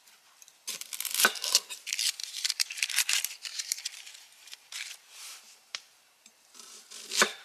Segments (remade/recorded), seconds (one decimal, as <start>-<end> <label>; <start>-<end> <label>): 0.0-0.5 remade; 0.5-1.1 recorded; 1.1-7.4 remade